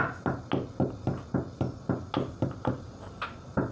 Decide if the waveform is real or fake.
real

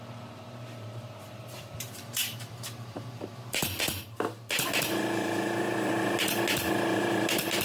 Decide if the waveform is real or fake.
fake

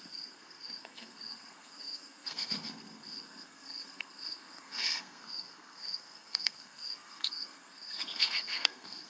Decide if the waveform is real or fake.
fake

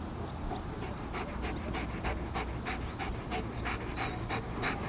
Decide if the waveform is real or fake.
real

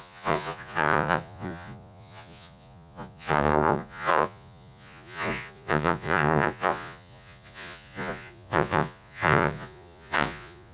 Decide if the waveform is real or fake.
fake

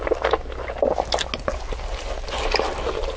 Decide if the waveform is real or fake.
real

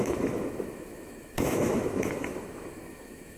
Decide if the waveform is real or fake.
fake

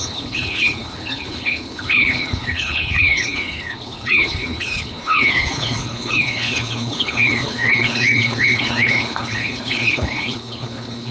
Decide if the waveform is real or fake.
fake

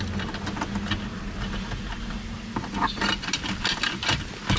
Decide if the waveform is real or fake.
real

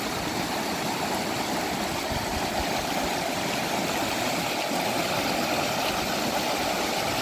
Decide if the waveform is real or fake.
real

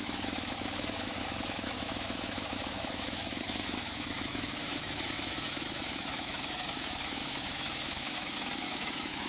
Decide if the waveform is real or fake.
fake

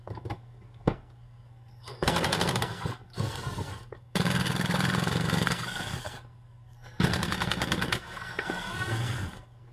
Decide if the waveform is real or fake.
fake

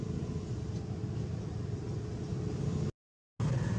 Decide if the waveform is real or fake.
real